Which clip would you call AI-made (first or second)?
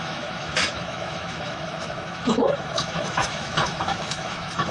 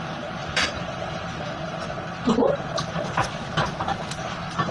first